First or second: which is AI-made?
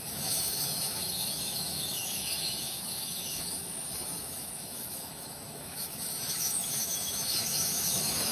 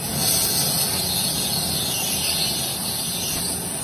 first